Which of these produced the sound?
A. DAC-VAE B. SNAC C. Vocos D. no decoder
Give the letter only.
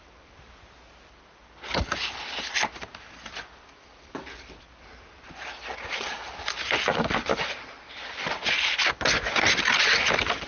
D